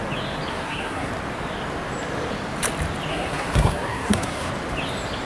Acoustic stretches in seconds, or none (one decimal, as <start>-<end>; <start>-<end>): 0.0-0.5; 1.1-3.1; 4.5-5.3